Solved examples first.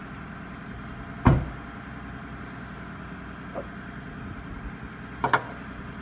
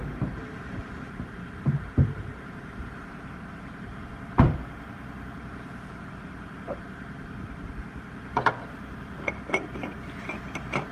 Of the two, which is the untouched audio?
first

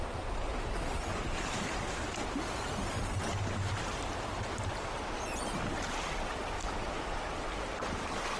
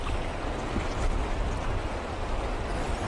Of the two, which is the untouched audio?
first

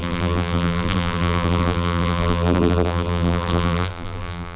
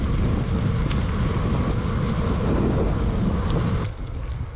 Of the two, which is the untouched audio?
second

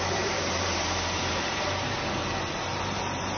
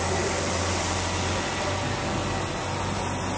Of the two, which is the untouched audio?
second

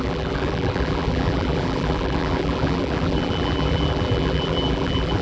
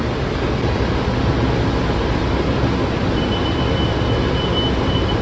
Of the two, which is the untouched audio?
second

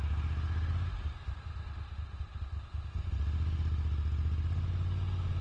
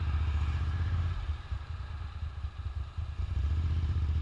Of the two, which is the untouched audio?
first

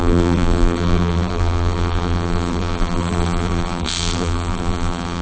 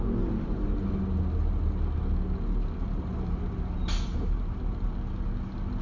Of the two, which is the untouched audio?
second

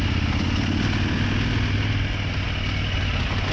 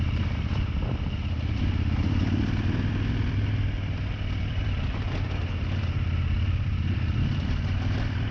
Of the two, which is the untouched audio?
first